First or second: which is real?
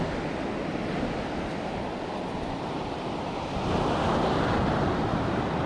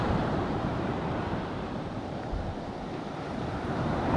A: first